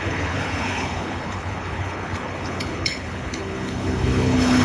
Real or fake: fake